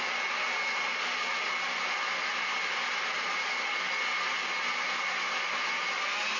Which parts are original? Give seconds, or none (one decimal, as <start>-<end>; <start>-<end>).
0.0-3.4; 3.9-6.4